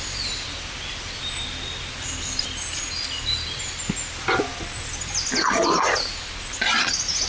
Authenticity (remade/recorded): recorded